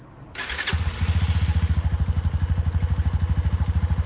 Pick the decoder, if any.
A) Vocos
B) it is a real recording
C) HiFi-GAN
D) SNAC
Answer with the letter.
B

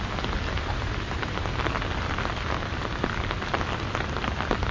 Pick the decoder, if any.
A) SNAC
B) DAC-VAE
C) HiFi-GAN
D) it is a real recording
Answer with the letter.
D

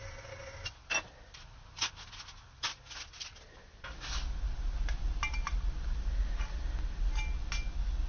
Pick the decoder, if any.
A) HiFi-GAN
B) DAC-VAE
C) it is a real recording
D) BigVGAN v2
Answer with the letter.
C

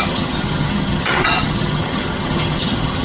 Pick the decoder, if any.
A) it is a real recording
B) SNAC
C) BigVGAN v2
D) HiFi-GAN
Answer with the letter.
D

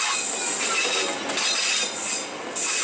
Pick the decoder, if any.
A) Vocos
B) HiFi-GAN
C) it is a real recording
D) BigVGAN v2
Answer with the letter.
C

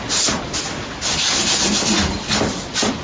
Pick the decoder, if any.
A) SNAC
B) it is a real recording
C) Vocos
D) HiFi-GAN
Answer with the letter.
B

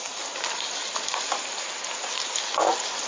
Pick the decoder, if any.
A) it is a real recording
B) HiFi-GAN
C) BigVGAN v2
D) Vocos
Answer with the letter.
A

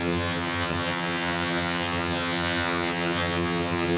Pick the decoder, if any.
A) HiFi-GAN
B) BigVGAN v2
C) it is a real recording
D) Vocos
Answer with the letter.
A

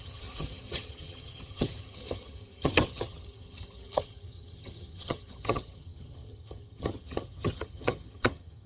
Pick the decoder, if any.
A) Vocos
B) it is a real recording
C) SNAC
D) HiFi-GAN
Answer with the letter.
D